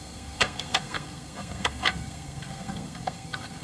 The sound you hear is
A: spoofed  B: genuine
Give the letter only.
A